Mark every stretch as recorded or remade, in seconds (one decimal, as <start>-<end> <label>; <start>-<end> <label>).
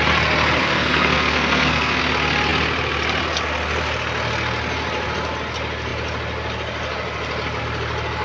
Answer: 0.0-0.6 recorded; 0.6-2.0 remade; 2.0-8.2 recorded